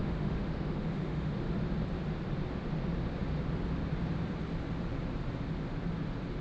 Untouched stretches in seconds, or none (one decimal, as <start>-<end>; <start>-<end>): 1.3-6.4